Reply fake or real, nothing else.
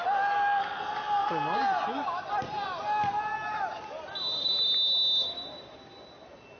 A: real